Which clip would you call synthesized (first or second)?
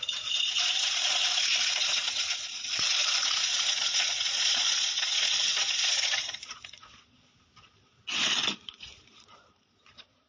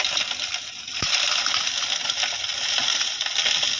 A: first